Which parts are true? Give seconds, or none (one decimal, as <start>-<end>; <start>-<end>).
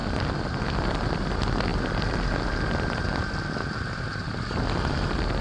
0.0-1.7; 4.4-5.4